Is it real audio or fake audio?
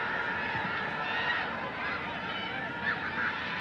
real